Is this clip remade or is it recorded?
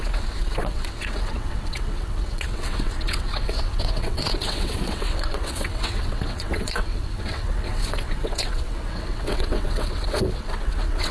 remade